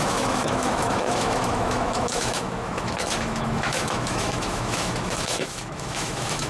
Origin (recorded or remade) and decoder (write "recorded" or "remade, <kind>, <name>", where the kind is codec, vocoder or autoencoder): remade, autoencoder, DAC-VAE